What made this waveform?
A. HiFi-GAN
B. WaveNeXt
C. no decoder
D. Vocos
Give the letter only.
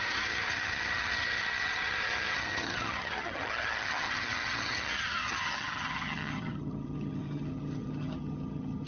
A